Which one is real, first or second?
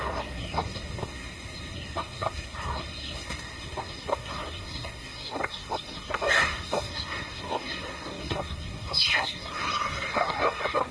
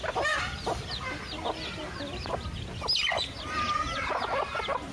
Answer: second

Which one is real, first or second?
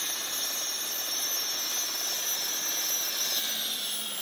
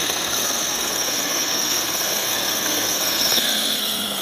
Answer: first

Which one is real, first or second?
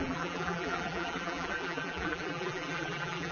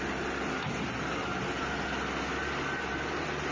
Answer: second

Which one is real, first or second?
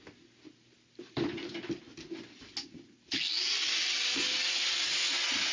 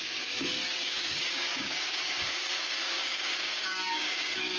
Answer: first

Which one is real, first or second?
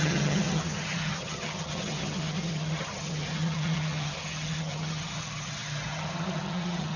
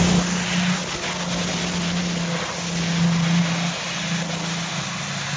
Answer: second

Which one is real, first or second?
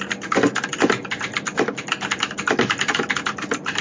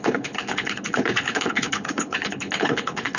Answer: first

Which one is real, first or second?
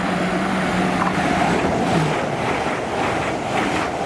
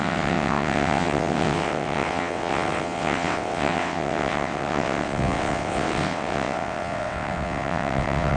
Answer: first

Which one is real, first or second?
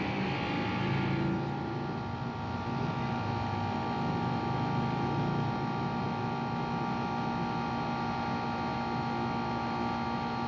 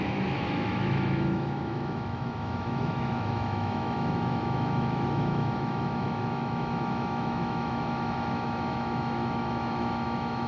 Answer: first